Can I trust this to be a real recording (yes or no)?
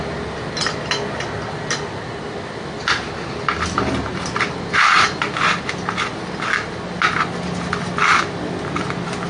yes